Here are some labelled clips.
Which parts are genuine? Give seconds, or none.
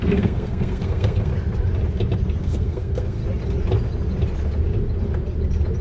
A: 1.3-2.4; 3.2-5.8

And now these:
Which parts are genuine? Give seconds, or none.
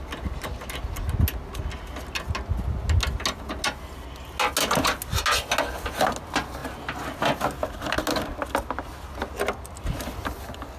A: 0.0-10.8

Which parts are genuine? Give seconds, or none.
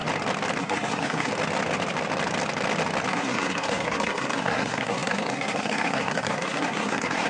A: 0.0-0.6; 1.3-3.1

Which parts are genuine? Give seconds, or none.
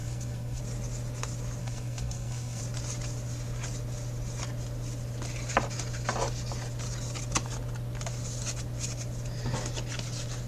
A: 0.6-1.6; 2.6-10.5